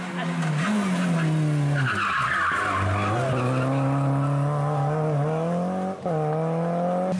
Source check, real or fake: real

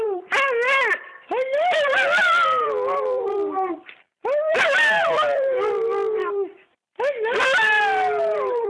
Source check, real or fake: fake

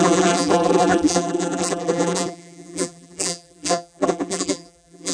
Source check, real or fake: fake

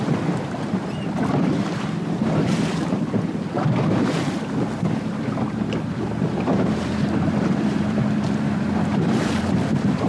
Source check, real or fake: fake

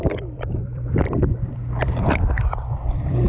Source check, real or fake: fake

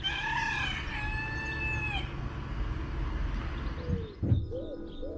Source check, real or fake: real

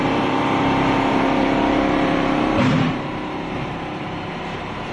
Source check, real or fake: fake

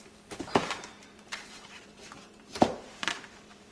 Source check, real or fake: fake